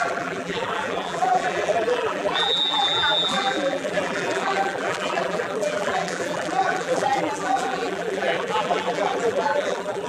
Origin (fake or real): fake